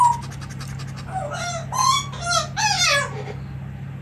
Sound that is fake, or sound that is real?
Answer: real